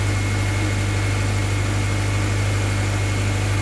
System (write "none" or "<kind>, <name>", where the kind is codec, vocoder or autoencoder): none